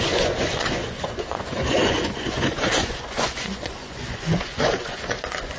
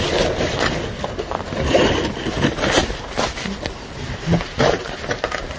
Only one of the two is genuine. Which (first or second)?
second